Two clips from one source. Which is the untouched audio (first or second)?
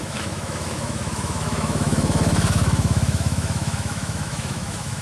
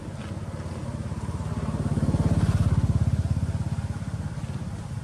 second